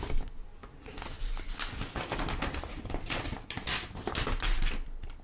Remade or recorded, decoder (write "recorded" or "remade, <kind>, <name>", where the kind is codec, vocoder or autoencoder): recorded